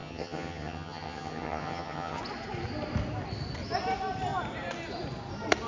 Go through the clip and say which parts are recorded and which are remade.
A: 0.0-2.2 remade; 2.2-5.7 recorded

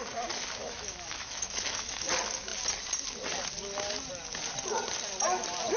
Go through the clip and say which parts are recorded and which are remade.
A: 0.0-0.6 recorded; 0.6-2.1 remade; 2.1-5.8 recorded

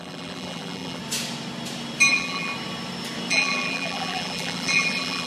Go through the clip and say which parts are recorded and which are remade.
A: 0.0-1.0 remade; 1.0-2.1 recorded; 2.1-2.5 remade; 2.5-3.3 recorded; 3.3-5.3 remade

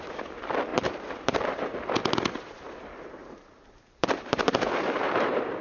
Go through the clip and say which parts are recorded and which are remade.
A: 0.0-0.7 recorded; 0.7-1.9 remade; 1.9-3.2 recorded; 3.2-5.6 remade